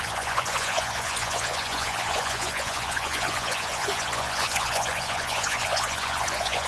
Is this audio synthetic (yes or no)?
yes